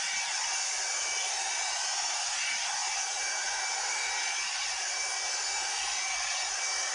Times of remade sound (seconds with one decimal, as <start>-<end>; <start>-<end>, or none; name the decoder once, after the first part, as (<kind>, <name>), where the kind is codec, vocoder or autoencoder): none